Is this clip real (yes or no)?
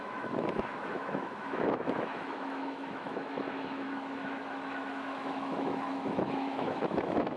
no